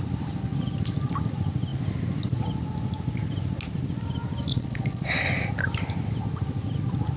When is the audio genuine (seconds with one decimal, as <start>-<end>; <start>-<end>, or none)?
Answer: 0.0-4.5; 5.1-7.2